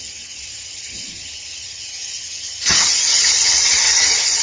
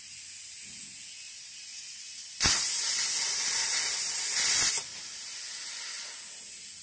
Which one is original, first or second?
second